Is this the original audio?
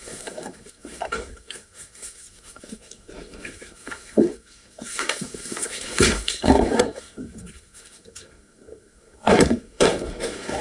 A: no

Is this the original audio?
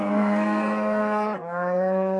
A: no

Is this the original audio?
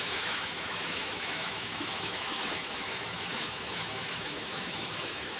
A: no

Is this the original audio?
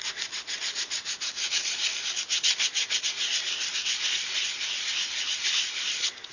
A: yes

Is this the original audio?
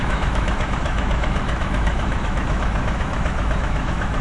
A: no